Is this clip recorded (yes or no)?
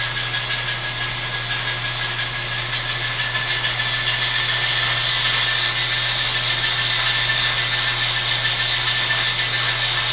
yes